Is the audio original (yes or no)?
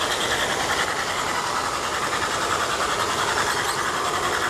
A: yes